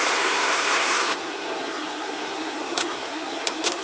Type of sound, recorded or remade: remade